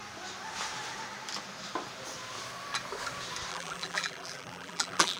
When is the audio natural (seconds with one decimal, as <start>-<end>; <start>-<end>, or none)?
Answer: 0.0-3.5